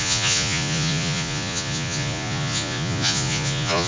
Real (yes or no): no